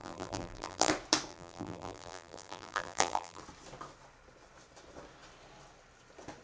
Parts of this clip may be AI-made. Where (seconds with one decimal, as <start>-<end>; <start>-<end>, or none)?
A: 0.0-0.9; 1.3-3.4